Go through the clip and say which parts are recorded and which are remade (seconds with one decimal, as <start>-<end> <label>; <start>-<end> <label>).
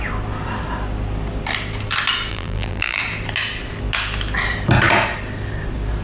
0.0-2.3 recorded; 2.3-3.0 remade; 3.0-6.0 recorded